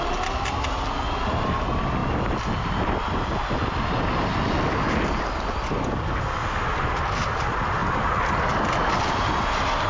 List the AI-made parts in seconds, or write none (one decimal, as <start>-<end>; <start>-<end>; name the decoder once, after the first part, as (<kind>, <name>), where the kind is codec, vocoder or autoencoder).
none